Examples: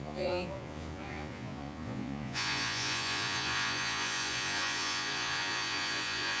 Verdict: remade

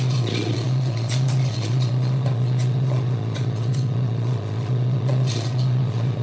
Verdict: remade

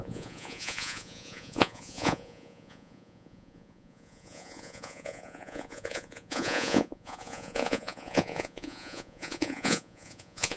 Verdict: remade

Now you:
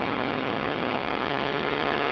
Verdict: remade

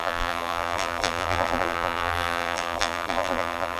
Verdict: remade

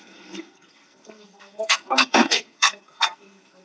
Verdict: remade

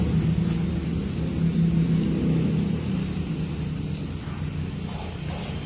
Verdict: recorded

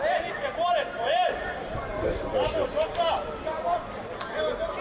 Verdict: remade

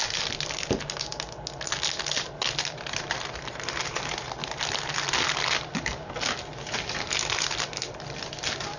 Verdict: recorded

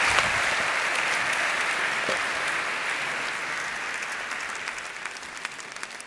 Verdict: recorded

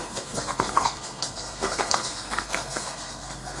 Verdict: remade